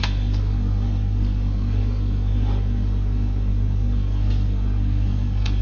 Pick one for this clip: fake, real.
fake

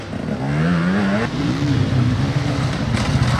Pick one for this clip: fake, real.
real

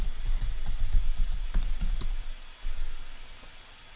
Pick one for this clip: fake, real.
real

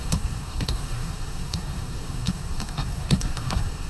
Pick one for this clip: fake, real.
fake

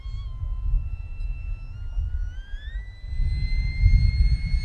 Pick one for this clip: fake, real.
real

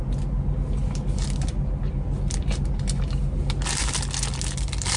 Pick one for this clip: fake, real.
real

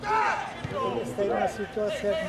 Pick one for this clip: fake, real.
real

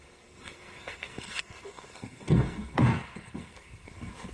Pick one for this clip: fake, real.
fake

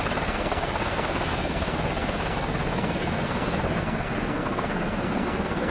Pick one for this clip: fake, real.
fake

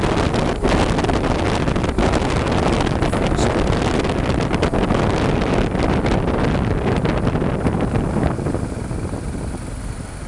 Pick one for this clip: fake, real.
real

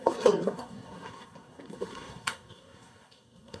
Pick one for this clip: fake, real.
fake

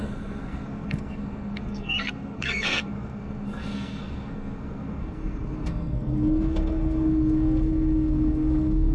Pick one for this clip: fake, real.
fake